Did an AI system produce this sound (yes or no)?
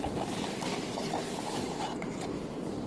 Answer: no